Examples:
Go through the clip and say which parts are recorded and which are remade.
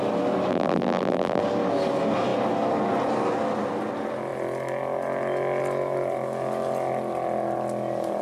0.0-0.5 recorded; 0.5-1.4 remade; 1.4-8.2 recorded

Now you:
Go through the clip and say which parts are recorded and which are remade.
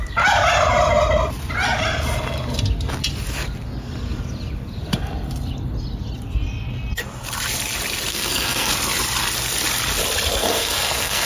0.0-8.1 recorded; 8.1-8.7 remade; 8.7-10.4 recorded; 10.4-11.3 remade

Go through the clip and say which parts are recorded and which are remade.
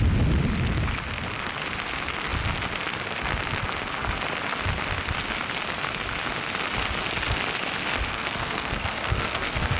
0.0-8.1 recorded; 8.1-9.8 remade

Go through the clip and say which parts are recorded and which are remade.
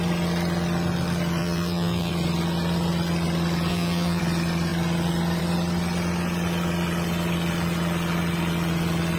0.0-1.4 recorded; 1.4-2.1 remade; 2.1-3.7 recorded; 3.7-4.2 remade; 4.2-9.2 recorded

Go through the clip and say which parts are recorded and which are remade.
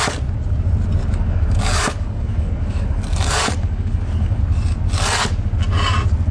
0.0-1.0 recorded; 1.0-4.4 remade; 4.4-6.3 recorded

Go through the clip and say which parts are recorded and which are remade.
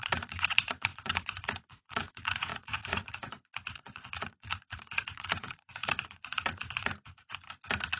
0.0-6.9 remade; 6.9-8.0 recorded